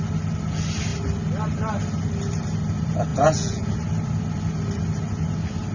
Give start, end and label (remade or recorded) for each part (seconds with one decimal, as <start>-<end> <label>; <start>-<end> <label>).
0.0-3.1 recorded; 3.1-3.7 remade; 3.7-5.7 recorded